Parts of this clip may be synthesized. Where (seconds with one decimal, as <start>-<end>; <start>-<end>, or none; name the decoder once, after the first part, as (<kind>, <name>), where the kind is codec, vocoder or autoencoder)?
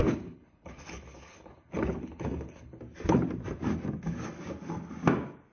0.0-2.8 (codec, HILCodec)